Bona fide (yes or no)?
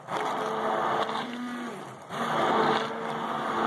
yes